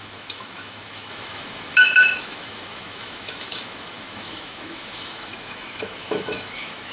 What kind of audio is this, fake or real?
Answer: fake